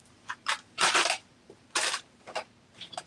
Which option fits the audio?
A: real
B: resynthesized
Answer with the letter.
B